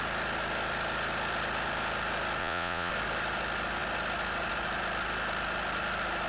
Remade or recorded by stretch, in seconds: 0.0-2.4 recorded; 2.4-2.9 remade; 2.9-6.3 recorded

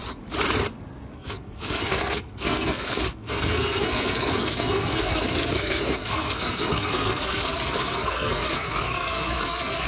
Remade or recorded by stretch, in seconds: 0.0-1.1 recorded; 1.1-9.9 remade

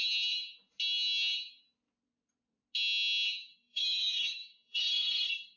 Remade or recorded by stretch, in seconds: 0.0-3.5 recorded; 3.5-5.6 remade

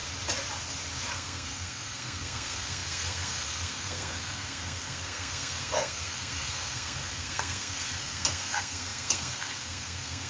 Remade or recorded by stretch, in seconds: 0.0-1.1 recorded; 1.1-10.3 remade

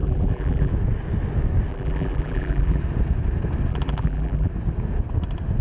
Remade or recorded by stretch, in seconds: 0.0-0.7 remade; 0.7-1.7 recorded; 1.7-2.8 remade; 2.8-3.7 recorded; 3.7-4.5 remade; 4.5-5.6 recorded